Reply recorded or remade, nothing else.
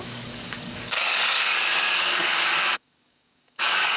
remade